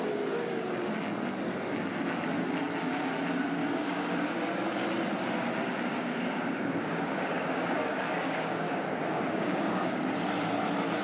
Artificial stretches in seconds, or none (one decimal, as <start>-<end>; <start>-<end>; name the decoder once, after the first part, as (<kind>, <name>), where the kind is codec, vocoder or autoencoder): 3.6-4.3 (codec, DAC); 5.9-10.0